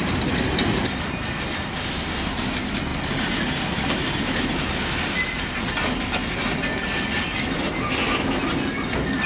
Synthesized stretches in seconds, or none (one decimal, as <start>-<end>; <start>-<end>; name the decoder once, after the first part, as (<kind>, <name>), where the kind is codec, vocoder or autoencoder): 6.2-7.7 (vocoder, BigVGAN v2)